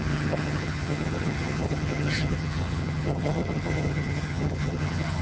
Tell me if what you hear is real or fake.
fake